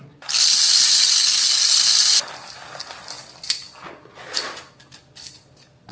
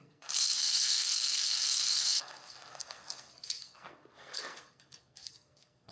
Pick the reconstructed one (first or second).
second